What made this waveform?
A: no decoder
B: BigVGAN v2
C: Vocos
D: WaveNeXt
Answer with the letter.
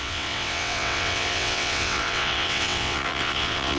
D